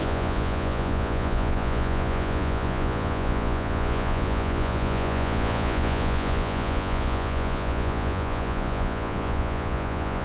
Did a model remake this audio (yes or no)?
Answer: yes